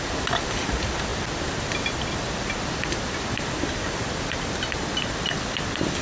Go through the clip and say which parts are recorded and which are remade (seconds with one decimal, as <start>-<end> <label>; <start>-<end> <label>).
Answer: 0.0-6.0 recorded